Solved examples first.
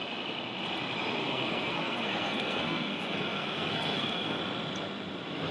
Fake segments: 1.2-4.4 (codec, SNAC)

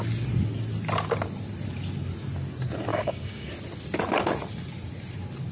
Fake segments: 2.9-3.5 (codec, DAC)